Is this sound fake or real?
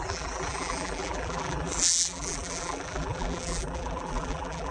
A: fake